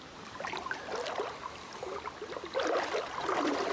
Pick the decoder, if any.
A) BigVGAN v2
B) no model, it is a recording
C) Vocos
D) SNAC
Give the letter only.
B